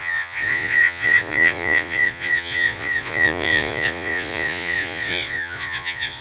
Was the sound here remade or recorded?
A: remade